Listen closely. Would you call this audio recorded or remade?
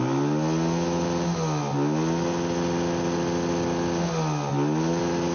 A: recorded